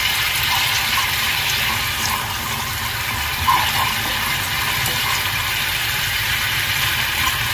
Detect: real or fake fake